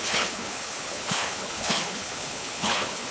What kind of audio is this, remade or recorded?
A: remade